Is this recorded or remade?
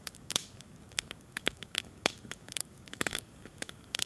remade